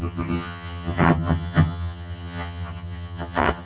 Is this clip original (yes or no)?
no